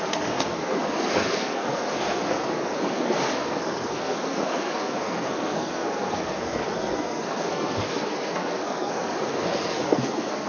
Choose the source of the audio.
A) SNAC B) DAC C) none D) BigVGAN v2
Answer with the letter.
A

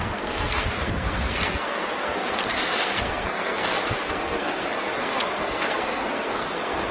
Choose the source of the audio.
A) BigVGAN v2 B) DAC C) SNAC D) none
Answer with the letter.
C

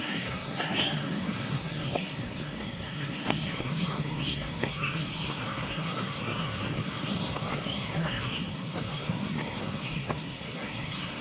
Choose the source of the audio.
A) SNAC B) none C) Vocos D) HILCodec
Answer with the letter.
A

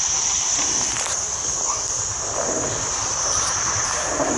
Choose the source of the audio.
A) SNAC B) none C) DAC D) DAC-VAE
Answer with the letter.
B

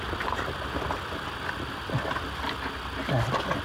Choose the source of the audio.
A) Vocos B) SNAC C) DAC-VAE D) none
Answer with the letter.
D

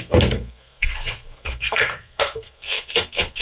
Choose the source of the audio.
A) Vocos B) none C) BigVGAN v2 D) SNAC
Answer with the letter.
D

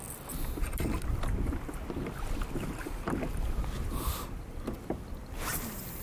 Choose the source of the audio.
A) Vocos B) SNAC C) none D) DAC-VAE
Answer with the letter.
C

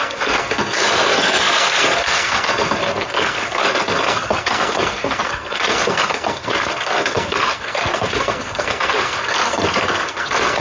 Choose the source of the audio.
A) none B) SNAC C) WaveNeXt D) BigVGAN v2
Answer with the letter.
B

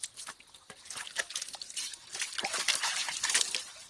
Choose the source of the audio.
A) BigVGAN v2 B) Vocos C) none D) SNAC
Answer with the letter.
C